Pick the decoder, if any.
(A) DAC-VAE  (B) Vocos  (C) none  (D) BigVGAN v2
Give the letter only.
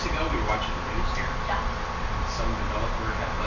C